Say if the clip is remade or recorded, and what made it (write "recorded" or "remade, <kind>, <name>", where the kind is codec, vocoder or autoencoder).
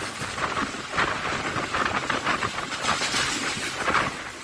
recorded